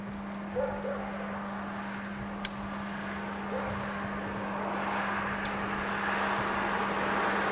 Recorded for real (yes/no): yes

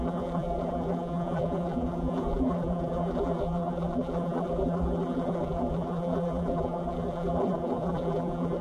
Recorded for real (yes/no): no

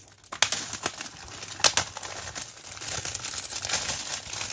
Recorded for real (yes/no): yes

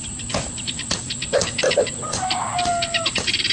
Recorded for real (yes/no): yes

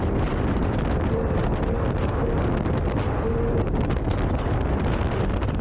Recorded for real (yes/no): yes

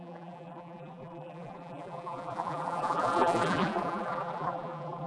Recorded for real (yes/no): no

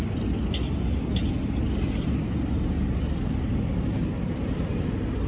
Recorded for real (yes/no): yes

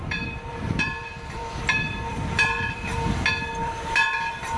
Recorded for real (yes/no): no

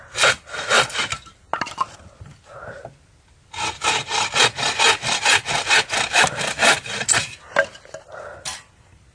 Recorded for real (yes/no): yes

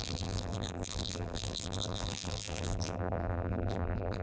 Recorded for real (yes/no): no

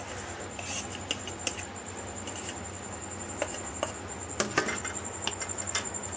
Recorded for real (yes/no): yes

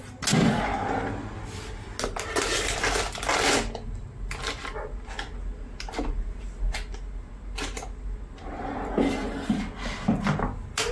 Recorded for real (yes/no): yes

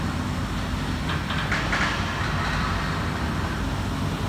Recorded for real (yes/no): yes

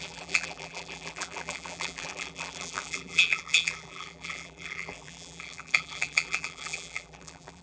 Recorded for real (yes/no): no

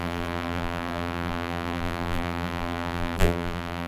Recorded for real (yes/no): no